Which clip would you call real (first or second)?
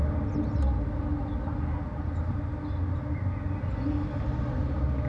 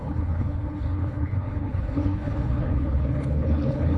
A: first